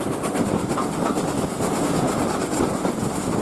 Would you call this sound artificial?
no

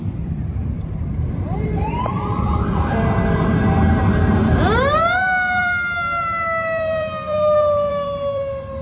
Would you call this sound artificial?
yes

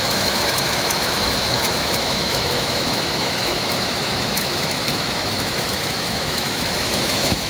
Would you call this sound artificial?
yes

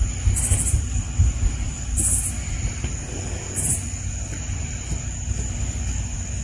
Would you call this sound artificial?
no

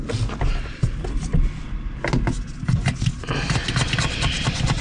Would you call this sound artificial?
no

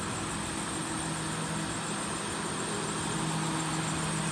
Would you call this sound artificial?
no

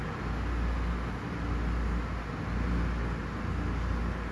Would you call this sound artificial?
no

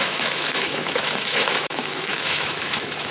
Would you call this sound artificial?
yes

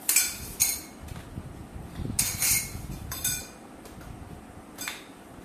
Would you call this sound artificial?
no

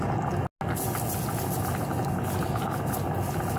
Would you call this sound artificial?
no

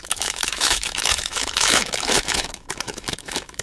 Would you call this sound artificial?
yes